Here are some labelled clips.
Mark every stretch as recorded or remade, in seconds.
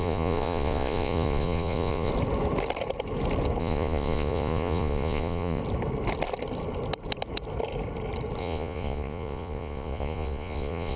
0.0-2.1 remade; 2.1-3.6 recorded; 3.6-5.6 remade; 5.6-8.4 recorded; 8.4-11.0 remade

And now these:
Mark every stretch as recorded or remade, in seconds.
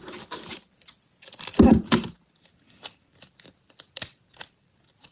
0.0-1.5 recorded; 1.5-2.1 remade; 2.1-5.1 recorded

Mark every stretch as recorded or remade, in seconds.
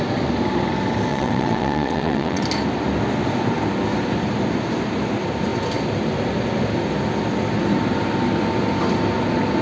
0.0-1.1 recorded; 1.1-2.4 remade; 2.4-9.6 recorded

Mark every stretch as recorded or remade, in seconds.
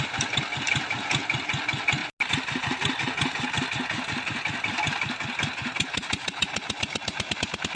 0.0-7.7 recorded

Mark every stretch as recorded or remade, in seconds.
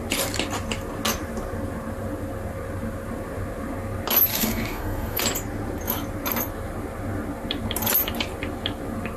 0.0-4.3 recorded; 4.3-5.2 remade; 5.2-9.2 recorded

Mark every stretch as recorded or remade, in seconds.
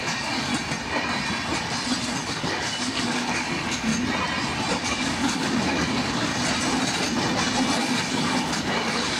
0.0-0.5 remade; 0.5-2.3 recorded; 2.3-3.9 remade; 3.9-4.7 recorded; 4.7-6.3 remade; 6.3-7.8 recorded; 7.8-9.2 remade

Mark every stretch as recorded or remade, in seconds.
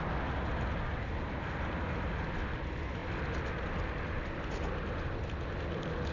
0.0-6.1 recorded